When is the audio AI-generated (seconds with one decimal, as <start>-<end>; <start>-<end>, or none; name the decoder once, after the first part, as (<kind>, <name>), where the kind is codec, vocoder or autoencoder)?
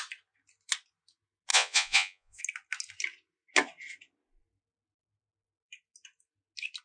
1.5-2.4 (vocoder, Vocos)